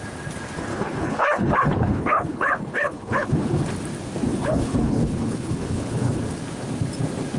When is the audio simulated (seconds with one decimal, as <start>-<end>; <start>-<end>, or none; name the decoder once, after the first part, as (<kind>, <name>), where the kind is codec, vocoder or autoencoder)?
0.7-3.6 (codec, HILCodec); 4.3-6.2